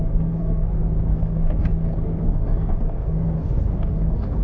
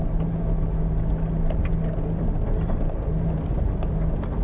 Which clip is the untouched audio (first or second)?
second